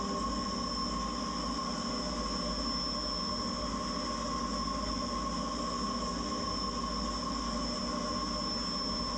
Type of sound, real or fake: real